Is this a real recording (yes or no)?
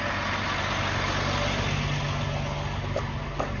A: yes